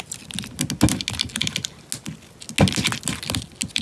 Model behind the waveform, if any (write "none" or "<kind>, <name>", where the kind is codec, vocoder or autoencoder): none